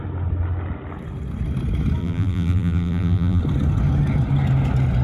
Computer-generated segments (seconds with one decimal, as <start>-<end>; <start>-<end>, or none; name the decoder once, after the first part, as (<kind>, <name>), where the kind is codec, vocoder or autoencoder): 2.0-3.4 (vocoder, BigVGAN v2)

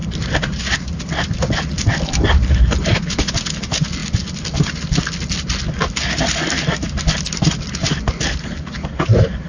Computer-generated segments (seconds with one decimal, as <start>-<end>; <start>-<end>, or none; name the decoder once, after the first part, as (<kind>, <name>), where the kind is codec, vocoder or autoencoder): none

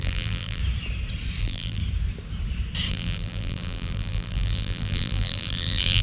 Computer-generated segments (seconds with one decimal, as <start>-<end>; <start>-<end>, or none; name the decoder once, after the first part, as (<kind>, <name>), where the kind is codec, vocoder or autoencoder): 0.0-0.6 (vocoder, BigVGAN v2); 1.4-1.8; 2.9-6.0

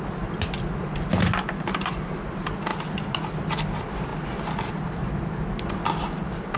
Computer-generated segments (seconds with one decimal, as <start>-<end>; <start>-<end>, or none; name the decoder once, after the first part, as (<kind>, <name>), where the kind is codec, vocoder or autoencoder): none

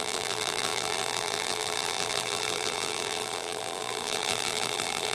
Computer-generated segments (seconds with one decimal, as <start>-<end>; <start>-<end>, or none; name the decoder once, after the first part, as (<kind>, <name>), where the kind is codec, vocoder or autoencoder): 0.0-5.1 (vocoder, BigVGAN v2)

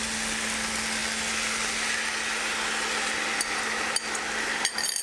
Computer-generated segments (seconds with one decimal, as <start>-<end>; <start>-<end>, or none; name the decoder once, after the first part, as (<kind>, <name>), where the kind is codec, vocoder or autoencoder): none

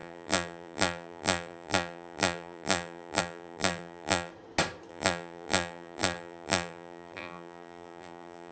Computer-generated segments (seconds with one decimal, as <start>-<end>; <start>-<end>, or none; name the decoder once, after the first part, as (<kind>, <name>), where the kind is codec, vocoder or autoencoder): 0.0-4.3 (vocoder, BigVGAN v2); 4.9-8.5

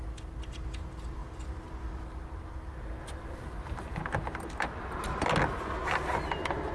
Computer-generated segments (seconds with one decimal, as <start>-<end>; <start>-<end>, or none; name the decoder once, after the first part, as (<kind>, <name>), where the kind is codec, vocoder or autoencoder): none